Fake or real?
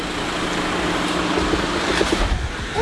real